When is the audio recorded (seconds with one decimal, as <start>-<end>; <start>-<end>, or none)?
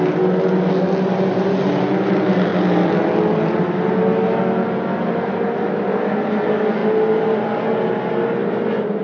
0.0-9.0